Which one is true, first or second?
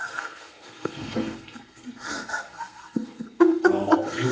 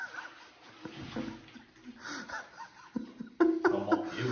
second